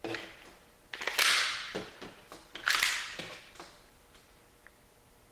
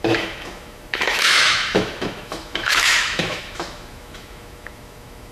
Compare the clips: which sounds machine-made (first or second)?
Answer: second